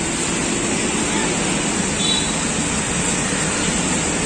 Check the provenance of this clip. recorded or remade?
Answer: recorded